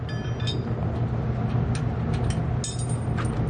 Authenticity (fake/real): real